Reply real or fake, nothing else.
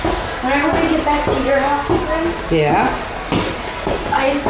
real